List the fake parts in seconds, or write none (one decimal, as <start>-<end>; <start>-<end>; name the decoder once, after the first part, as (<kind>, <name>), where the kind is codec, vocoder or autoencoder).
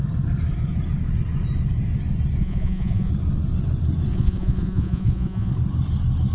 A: 2.4-3.1 (vocoder, Vocos); 4.1-5.5